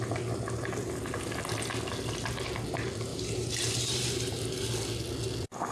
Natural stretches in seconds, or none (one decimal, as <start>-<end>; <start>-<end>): 0.0-3.1; 4.4-5.7